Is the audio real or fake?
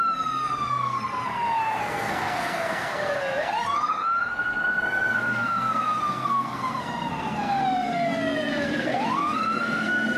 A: fake